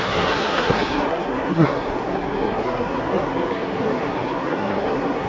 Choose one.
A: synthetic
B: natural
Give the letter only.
A